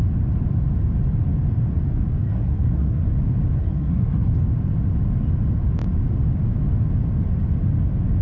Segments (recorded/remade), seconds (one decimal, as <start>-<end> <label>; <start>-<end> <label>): 0.0-2.2 recorded; 2.2-3.0 remade; 3.0-3.6 recorded; 3.6-4.3 remade; 4.3-8.2 recorded